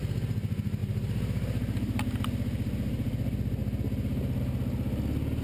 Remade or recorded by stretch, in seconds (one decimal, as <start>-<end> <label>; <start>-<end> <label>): 0.0-0.8 recorded; 0.8-2.0 remade; 2.0-5.4 recorded